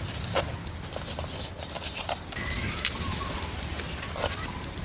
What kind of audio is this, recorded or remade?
recorded